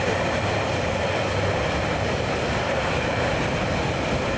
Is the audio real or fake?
real